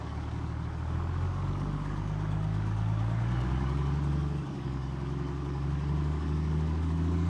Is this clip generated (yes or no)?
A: yes